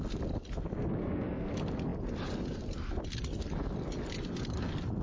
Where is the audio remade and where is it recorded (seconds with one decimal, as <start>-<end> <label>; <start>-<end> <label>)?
0.0-1.0 recorded; 1.0-1.5 remade; 1.5-5.0 recorded